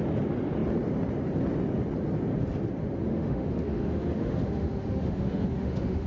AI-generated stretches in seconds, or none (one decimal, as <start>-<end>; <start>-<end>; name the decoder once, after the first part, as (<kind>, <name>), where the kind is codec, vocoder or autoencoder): 3.1-6.1 (autoencoder, DAC-VAE)